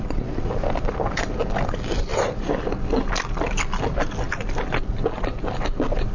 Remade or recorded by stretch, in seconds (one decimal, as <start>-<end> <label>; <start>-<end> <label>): 0.0-2.1 remade; 2.1-4.3 recorded; 4.3-6.1 remade